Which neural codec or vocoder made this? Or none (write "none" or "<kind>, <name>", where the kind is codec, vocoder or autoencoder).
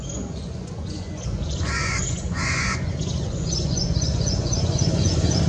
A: vocoder, Vocos